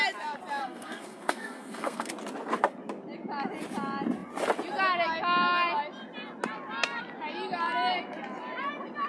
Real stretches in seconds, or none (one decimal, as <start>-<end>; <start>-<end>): 0.0-0.6; 2.1-9.1